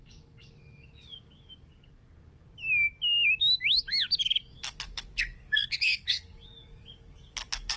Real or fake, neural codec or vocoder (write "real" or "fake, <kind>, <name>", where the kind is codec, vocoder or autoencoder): fake, codec, DAC